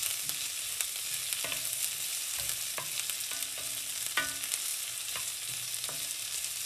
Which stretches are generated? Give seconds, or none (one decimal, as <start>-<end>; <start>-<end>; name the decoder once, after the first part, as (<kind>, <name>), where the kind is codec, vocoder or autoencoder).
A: none